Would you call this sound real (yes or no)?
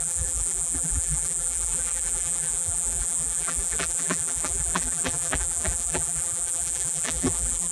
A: no